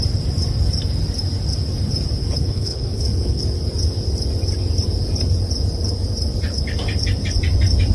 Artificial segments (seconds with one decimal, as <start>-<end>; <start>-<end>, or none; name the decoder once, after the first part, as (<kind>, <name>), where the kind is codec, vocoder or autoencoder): 2.2-3.4 (codec, HILCodec)